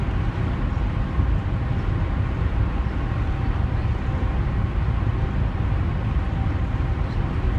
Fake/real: real